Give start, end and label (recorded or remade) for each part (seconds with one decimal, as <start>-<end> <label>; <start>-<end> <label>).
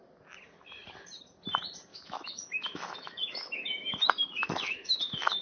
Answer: 0.0-1.9 recorded; 1.9-5.4 remade